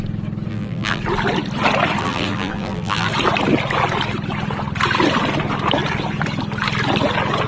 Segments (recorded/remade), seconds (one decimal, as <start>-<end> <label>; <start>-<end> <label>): 0.0-0.5 recorded; 0.5-1.0 remade; 1.0-2.0 recorded; 2.0-3.1 remade; 3.1-7.5 recorded